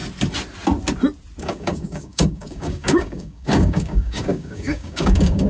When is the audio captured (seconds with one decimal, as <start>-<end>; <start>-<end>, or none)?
0.0-1.4